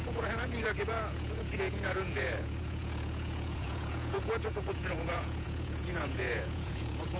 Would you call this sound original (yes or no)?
no